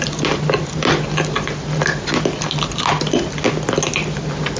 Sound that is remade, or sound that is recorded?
recorded